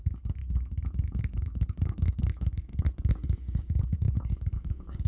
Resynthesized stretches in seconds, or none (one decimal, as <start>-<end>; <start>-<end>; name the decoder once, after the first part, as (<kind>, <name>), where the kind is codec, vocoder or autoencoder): 0.0-0.4 (codec, DAC); 1.2-2.7; 3.6-5.1